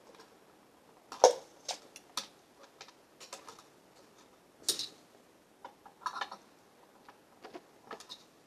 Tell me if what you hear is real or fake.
real